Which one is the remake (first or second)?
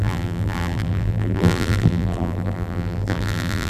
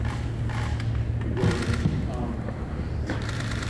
first